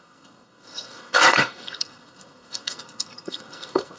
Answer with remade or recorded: remade